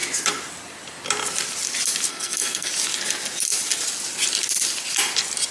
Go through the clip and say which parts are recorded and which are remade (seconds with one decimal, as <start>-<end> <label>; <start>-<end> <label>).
0.0-2.1 recorded; 2.1-2.7 remade; 2.7-5.5 recorded

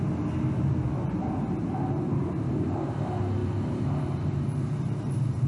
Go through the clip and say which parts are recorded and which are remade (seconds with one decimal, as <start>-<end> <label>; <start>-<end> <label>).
0.0-3.4 recorded; 3.4-5.5 remade